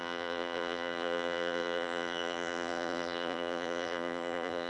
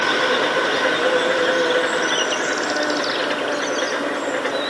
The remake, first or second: first